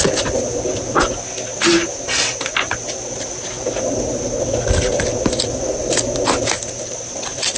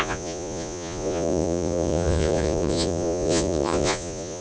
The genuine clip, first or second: first